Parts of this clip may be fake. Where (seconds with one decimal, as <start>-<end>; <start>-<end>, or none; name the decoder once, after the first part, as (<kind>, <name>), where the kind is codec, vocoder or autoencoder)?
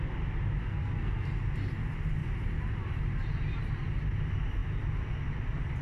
0.6-1.3 (codec, SNAC)